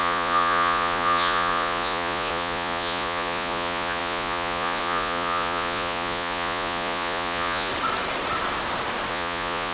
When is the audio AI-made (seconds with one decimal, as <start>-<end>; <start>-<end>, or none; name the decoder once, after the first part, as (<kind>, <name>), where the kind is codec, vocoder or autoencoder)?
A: 0.0-7.7 (vocoder, Vocos); 9.1-9.7